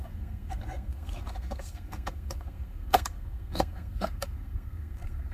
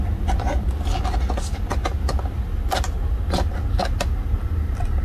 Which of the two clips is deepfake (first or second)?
first